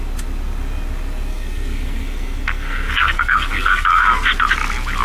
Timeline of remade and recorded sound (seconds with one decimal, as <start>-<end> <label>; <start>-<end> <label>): 0.0-1.3 recorded; 1.3-4.3 remade; 4.3-5.0 recorded